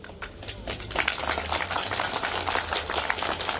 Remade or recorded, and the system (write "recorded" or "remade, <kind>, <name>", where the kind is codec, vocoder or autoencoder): recorded